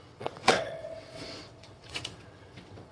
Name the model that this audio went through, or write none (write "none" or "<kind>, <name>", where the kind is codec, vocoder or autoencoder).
vocoder, WaveNeXt